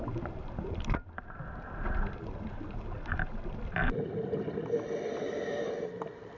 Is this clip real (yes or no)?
yes